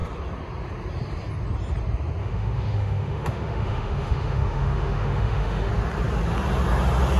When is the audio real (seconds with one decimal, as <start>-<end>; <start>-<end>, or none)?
0.0-2.2; 5.7-7.2